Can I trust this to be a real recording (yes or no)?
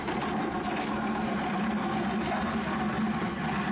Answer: yes